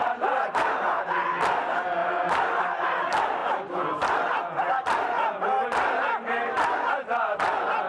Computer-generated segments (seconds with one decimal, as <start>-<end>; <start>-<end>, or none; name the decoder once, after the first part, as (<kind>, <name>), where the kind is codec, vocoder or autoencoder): none